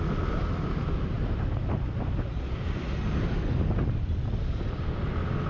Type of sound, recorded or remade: recorded